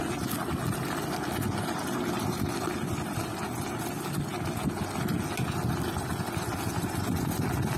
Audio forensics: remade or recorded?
recorded